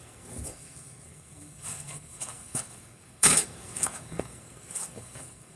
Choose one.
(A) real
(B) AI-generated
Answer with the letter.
B